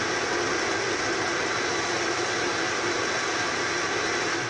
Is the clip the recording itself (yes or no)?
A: yes